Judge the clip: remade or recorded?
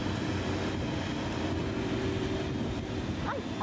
recorded